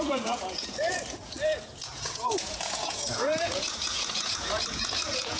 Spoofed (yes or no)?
yes